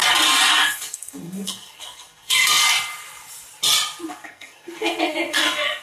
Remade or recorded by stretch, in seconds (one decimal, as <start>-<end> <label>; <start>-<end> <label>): 0.0-0.5 recorded; 0.5-2.6 remade; 2.6-4.1 recorded; 4.1-5.8 remade